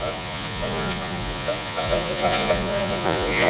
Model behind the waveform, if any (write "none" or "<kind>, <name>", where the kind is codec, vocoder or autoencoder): vocoder, Vocos